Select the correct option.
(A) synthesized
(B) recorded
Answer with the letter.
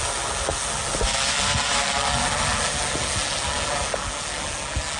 B